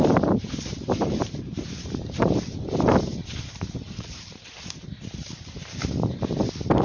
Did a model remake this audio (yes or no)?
yes